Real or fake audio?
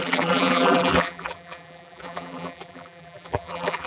fake